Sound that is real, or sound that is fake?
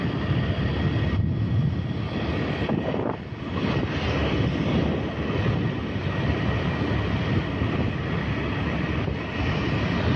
real